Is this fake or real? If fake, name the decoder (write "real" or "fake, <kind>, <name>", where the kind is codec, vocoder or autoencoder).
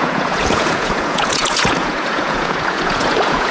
fake, vocoder, Vocos